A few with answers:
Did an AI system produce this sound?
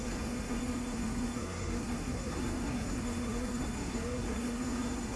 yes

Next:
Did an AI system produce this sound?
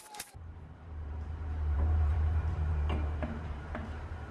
yes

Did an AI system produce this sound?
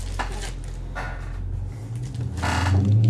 no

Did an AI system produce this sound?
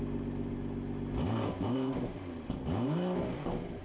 no